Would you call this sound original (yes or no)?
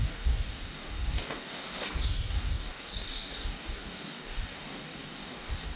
no